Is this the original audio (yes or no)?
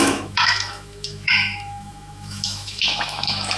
no